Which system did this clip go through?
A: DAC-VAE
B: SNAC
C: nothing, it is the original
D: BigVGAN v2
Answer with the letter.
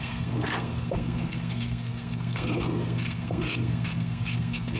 B